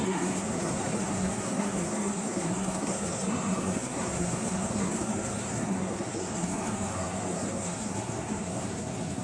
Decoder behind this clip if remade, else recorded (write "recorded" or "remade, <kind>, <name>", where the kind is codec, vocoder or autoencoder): remade, codec, SNAC